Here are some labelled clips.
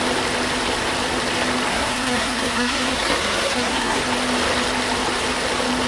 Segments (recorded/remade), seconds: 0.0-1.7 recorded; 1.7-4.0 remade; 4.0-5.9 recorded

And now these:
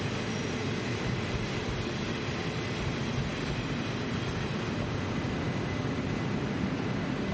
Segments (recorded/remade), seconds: 0.0-7.3 recorded

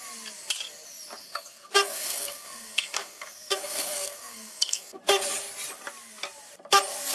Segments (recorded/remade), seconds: 0.0-1.2 recorded; 1.2-5.0 remade; 5.0-7.1 recorded

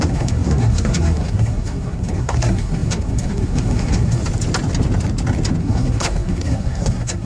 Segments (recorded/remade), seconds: 0.0-4.2 remade; 4.2-5.6 recorded; 5.6-7.2 remade

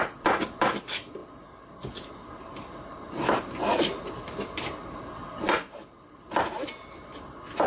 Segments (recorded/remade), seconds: 0.0-7.7 recorded